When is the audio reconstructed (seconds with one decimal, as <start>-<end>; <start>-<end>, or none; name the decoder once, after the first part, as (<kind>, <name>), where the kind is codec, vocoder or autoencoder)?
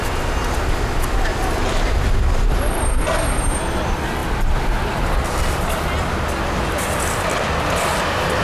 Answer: 1.3-2.8 (vocoder, BigVGAN v2)